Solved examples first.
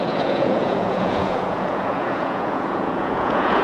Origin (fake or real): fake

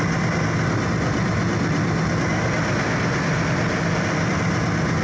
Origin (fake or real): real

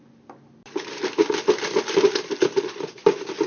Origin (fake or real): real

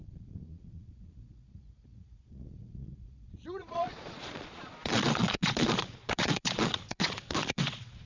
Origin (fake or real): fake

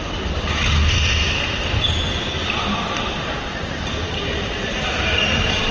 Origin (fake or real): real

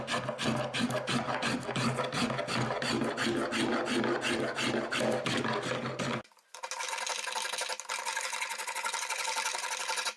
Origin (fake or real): real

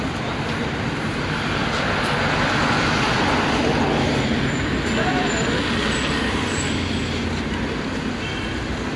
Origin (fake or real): real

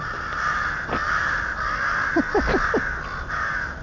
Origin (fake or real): real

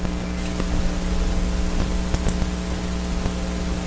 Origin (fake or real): real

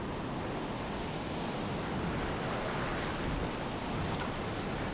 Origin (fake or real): real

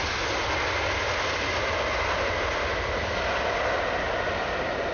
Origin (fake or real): real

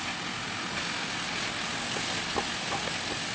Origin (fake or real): real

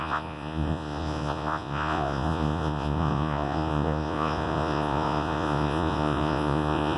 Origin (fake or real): fake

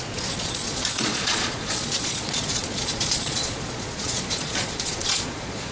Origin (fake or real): fake